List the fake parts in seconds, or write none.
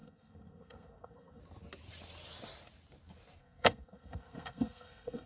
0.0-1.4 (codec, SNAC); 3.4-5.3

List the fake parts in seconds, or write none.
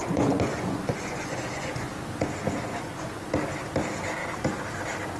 0.0-1.9 (vocoder, Vocos); 2.7-3.3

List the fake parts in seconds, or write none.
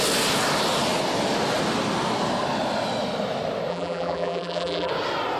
3.7-4.9 (vocoder, BigVGAN v2)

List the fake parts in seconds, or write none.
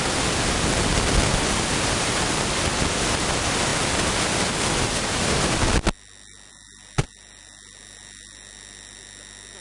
none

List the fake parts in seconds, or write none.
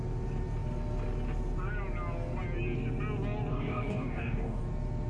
3.5-4.6 (codec, DAC)